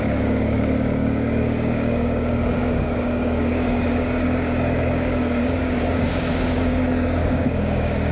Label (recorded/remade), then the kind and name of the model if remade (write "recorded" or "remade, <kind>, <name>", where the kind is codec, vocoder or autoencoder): remade, codec, DAC